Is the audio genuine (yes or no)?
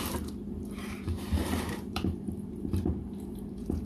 no